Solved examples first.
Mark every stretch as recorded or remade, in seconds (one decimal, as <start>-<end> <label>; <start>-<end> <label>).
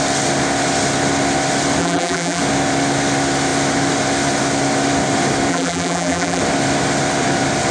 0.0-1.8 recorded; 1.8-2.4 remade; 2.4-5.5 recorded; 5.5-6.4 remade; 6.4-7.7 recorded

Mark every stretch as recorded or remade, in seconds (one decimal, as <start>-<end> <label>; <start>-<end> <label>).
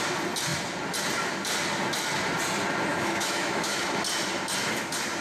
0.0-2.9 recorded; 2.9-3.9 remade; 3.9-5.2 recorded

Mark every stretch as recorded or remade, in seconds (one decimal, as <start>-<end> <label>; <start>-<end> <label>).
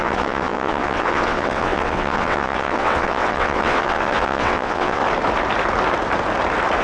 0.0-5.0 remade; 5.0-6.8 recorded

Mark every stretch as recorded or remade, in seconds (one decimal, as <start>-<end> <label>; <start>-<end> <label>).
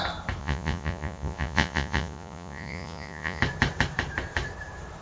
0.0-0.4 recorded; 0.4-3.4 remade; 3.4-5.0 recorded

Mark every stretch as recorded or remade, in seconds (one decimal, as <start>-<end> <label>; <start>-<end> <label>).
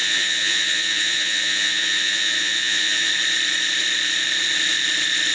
0.0-3.1 remade; 3.1-5.3 recorded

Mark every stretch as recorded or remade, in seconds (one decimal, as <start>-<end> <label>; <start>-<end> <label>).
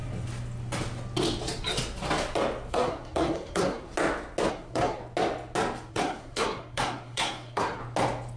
0.0-2.7 recorded; 2.7-3.9 remade; 3.9-4.5 recorded; 4.5-5.0 remade; 5.0-5.9 recorded; 5.9-7.8 remade; 7.8-8.4 recorded